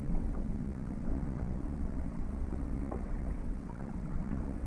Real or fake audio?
fake